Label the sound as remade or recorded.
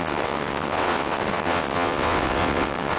remade